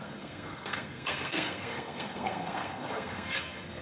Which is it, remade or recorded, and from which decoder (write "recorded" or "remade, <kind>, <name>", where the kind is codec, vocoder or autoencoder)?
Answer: remade, codec, SNAC